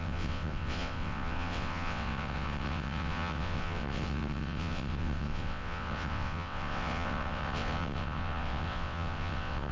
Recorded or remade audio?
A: remade